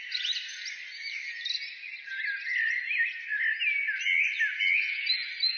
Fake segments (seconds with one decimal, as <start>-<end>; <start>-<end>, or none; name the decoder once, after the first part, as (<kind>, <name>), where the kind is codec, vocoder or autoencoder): none